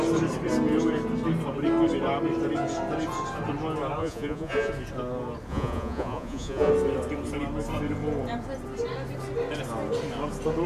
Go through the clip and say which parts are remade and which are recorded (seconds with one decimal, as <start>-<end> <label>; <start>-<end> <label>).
0.0-4.0 recorded; 4.0-4.7 remade; 4.7-5.5 recorded; 5.5-6.7 remade; 6.7-10.7 recorded